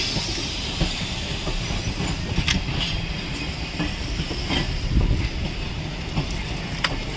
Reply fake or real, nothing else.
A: real